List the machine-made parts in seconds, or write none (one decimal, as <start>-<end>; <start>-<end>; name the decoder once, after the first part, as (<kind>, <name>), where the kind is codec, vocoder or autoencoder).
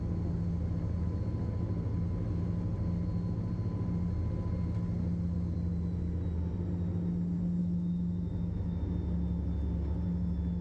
7.6-8.8 (autoencoder, DAC-VAE)